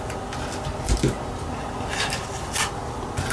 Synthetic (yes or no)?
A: no